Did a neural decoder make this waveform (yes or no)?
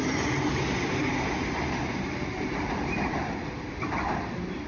yes